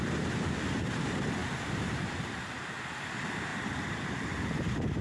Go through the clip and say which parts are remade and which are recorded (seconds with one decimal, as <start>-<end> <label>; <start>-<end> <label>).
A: 0.0-1.4 recorded; 1.4-2.7 remade; 2.7-3.5 recorded; 3.5-4.1 remade; 4.1-5.0 recorded